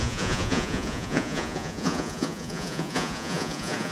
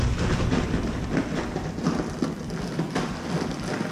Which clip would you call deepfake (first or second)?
first